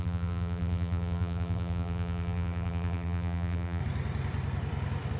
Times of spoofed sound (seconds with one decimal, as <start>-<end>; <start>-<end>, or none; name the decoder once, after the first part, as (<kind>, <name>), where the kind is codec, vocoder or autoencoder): 0.0-3.8 (vocoder, BigVGAN v2)